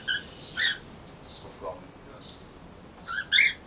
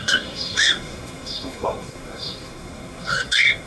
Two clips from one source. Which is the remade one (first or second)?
second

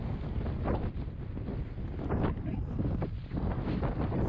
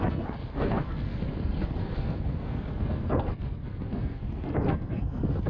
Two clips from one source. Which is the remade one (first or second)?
second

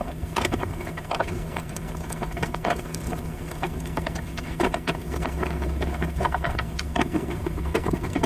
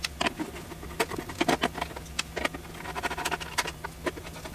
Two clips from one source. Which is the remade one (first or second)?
first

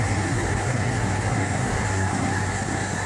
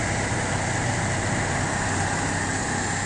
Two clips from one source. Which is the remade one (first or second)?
first